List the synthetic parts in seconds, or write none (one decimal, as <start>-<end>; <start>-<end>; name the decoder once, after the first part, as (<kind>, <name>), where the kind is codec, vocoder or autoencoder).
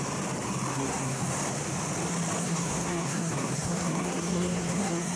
0.7-1.2 (codec, SNAC); 2.4-5.2